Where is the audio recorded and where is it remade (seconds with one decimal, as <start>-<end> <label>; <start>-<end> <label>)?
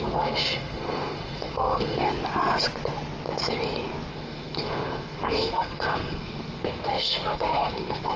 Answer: 0.0-2.1 remade; 2.1-4.1 recorded; 4.1-8.2 remade